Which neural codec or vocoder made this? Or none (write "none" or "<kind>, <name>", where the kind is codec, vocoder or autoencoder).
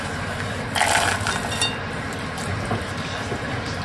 vocoder, BigVGAN v2